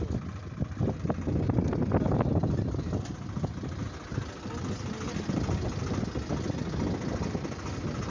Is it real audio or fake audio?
real